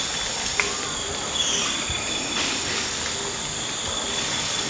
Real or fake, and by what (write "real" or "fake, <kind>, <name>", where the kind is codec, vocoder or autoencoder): real